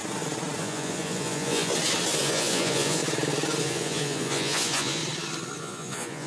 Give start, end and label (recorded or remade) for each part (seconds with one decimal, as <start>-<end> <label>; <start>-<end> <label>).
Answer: 0.0-0.6 recorded; 0.6-1.7 remade; 1.7-2.2 recorded; 2.2-3.0 remade; 3.0-3.6 recorded; 3.6-5.0 remade; 5.0-5.6 recorded; 5.6-6.3 remade